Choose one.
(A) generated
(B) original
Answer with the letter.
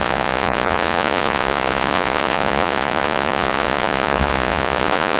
A